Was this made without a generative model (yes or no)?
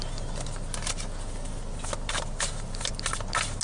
yes